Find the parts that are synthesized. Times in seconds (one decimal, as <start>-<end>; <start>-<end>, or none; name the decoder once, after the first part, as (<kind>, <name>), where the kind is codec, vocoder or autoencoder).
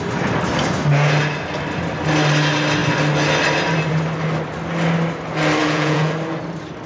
5.6-6.1 (vocoder, Vocos)